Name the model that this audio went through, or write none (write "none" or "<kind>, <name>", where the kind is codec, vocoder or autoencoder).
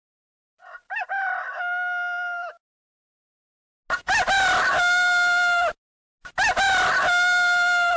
none